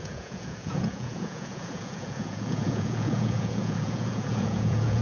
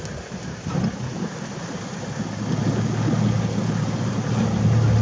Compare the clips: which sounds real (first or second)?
second